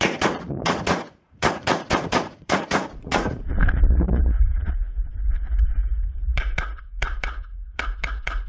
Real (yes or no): no